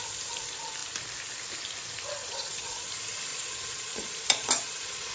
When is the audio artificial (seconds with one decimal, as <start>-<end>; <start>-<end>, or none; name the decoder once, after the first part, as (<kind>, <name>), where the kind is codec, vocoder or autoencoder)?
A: 2.2-2.8 (vocoder, Vocos); 3.3-5.1